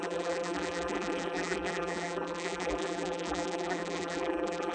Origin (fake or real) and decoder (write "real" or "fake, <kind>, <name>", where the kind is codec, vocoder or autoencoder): fake, vocoder, BigVGAN v2